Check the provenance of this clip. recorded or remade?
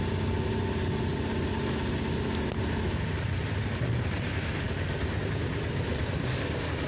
recorded